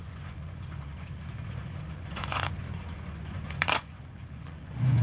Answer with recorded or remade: remade